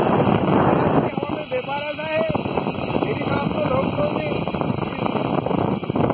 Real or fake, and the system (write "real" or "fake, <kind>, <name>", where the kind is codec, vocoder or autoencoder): real